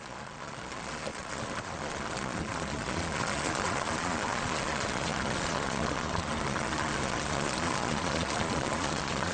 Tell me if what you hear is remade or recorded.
remade